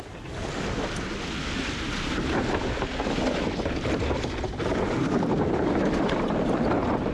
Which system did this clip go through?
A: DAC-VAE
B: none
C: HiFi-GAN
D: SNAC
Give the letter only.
B